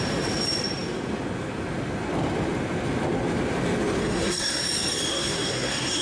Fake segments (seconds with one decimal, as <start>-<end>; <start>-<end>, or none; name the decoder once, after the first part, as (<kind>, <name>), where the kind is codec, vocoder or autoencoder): 4.0-4.6 (codec, SNAC); 5.1-6.0